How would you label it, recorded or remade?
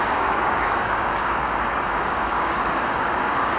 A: remade